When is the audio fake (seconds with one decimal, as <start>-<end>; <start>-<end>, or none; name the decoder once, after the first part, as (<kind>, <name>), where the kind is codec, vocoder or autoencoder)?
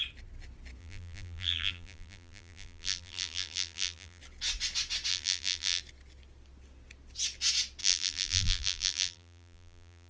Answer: 0.8-4.2 (vocoder, BigVGAN v2); 5.1-5.8; 7.8-10.1